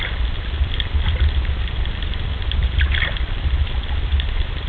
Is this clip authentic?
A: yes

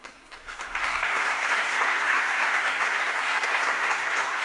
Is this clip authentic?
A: no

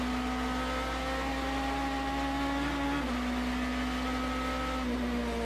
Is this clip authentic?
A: yes